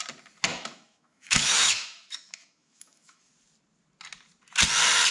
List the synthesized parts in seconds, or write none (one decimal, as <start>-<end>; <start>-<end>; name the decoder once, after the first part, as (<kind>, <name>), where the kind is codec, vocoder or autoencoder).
0.5-3.3 (autoencoder, DAC-VAE)